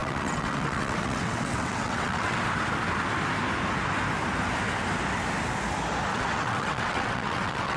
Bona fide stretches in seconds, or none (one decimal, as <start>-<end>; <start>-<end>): 2.4-6.1